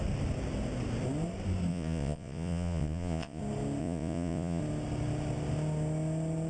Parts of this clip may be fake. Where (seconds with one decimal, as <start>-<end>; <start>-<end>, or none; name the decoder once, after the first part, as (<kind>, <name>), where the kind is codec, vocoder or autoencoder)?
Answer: 1.7-3.4 (vocoder, Vocos); 3.8-4.6